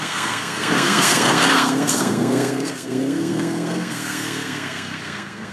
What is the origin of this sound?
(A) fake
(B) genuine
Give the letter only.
A